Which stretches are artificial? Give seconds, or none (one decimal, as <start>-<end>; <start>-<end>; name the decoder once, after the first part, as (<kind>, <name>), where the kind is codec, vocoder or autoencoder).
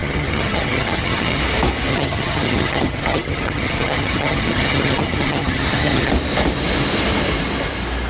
0.0-1.4 (vocoder, HiFi-GAN); 1.9-6.1